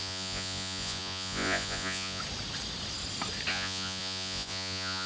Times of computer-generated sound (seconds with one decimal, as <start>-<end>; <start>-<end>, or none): 0.0-2.2; 3.5-5.1